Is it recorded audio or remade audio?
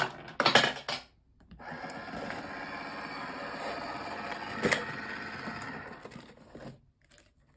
recorded